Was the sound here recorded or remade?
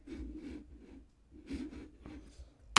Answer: recorded